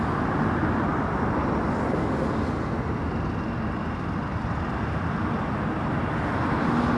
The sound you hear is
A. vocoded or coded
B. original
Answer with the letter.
B